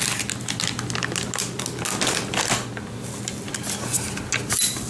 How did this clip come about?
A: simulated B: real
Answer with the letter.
B